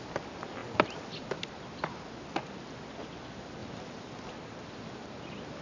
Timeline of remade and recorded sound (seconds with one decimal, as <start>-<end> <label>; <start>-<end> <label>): 0.0-5.6 recorded